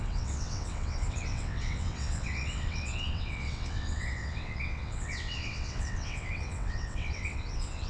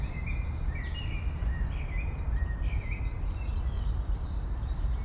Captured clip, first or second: second